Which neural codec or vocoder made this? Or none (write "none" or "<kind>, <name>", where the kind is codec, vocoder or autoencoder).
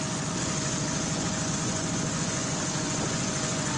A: vocoder, Vocos